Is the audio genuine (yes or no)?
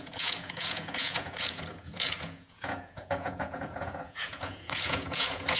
no